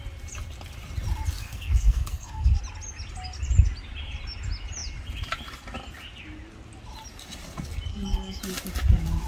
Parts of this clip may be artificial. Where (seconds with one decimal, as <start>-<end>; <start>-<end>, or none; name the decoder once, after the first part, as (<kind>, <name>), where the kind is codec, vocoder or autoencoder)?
1.4-2.6 (codec, SNAC); 7.9-8.4